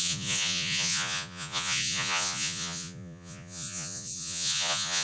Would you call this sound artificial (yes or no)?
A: yes